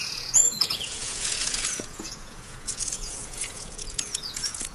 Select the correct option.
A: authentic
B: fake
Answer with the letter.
B